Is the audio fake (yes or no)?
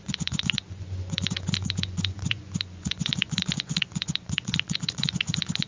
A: yes